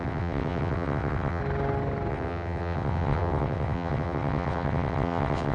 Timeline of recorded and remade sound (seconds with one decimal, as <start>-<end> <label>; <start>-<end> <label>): 0.0-1.4 remade; 1.4-2.1 recorded; 2.1-5.5 remade

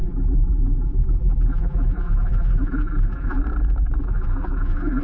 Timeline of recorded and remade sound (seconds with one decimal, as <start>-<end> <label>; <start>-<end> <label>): 0.0-3.4 remade; 3.4-4.0 recorded; 4.0-5.0 remade

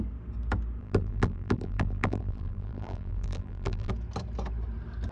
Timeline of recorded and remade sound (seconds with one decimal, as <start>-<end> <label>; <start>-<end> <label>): 0.0-0.8 recorded; 0.8-3.9 remade; 3.9-5.1 recorded

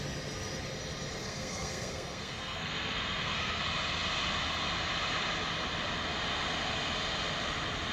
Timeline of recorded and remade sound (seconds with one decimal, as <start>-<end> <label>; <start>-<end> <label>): 0.0-1.2 recorded; 1.2-3.6 remade; 3.6-7.9 recorded

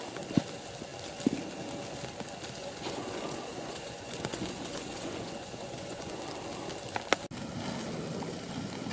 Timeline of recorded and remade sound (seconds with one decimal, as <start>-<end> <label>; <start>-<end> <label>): 0.0-2.6 recorded; 2.6-6.2 remade; 6.2-8.9 recorded

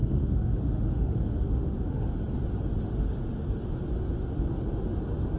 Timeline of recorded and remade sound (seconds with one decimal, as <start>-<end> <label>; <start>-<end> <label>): 0.0-2.1 remade; 2.1-2.8 recorded; 2.8-3.2 remade; 3.2-5.4 recorded

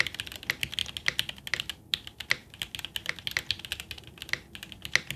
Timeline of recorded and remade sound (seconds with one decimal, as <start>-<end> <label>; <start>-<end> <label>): 0.0-5.2 recorded

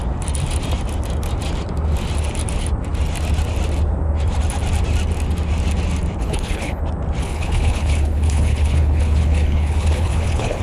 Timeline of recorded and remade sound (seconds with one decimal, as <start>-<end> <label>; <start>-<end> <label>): 0.0-6.2 recorded; 6.2-6.8 remade; 6.8-7.2 recorded; 7.2-10.6 remade